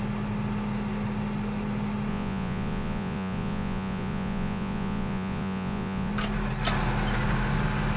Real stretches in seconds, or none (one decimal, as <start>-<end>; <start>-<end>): 0.0-2.1; 6.1-8.0